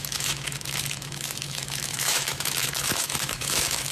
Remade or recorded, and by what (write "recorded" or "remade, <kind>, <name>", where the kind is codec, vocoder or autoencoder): remade, autoencoder, DAC-VAE